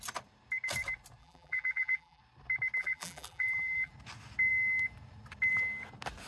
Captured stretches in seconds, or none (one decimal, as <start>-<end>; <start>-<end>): 0.0-1.2; 2.2-2.8; 3.9-6.3